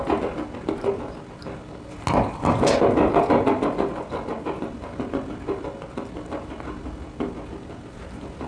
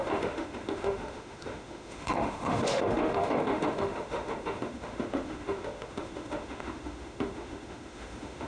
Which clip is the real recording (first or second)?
first